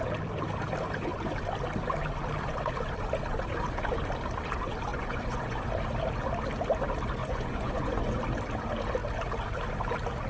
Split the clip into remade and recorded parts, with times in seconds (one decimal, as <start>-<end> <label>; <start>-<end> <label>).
0.0-4.9 recorded; 4.9-5.7 remade; 5.7-7.2 recorded; 7.2-8.2 remade; 8.2-10.3 recorded